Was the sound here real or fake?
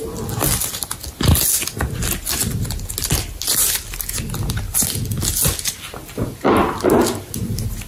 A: real